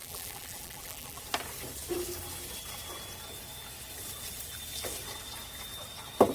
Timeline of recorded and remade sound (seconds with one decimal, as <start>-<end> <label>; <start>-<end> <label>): 0.0-1.2 remade; 1.2-6.3 recorded